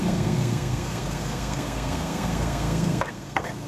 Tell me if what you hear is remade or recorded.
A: remade